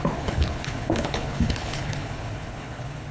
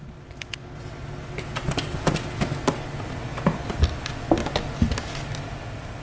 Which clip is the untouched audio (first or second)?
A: second